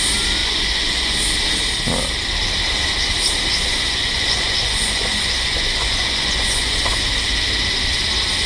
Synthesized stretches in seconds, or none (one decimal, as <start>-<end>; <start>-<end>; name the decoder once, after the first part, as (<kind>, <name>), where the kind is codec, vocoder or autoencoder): 0.4-1.2 (vocoder, Vocos); 3.5-7.0